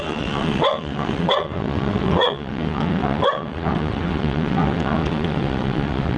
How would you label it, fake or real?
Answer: fake